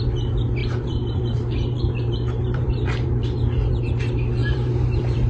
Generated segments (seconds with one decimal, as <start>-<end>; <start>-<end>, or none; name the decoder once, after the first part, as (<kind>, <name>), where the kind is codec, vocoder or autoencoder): 0.6-3.8 (vocoder, BigVGAN v2); 4.4-5.3